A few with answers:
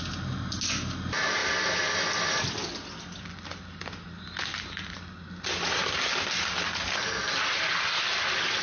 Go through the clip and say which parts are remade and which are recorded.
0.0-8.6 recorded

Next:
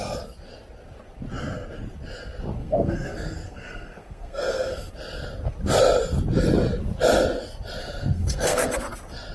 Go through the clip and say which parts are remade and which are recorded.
0.0-2.6 recorded; 2.6-4.9 remade; 4.9-7.8 recorded; 7.8-8.7 remade; 8.7-9.3 recorded

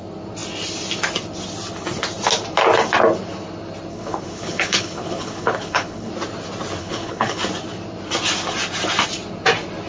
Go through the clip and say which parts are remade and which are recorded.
0.0-3.9 recorded; 3.9-6.1 remade; 6.1-6.8 recorded; 6.8-7.4 remade; 7.4-9.9 recorded

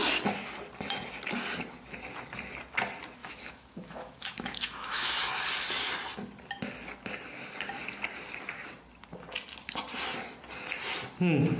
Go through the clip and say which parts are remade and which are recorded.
0.0-3.2 recorded; 3.2-5.3 remade; 5.3-11.6 recorded

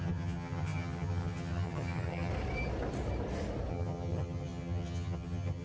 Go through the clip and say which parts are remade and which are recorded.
0.0-2.3 remade; 2.3-3.7 recorded; 3.7-5.6 remade